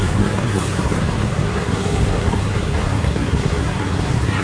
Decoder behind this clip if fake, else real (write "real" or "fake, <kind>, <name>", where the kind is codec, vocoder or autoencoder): fake, codec, SNAC